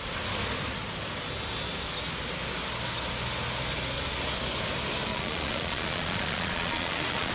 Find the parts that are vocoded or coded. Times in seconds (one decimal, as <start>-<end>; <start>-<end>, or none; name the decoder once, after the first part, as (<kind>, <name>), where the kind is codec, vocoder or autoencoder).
5.1-7.3 (vocoder, Vocos)